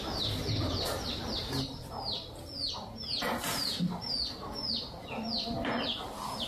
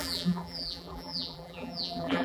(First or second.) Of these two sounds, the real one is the first